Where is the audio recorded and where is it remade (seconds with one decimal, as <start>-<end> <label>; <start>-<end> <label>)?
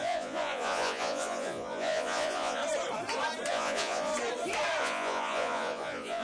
0.0-2.6 remade; 2.6-3.5 recorded; 3.5-4.1 remade; 4.1-4.8 recorded; 4.8-6.2 remade